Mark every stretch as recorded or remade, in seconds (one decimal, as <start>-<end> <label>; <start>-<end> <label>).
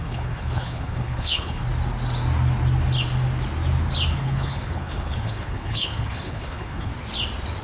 0.0-1.6 remade; 1.6-4.1 recorded; 4.1-6.9 remade; 6.9-7.6 recorded